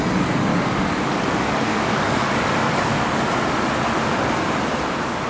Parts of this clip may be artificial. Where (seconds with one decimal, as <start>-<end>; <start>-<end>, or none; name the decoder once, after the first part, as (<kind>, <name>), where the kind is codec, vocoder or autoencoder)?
0.5-3.2 (codec, DAC)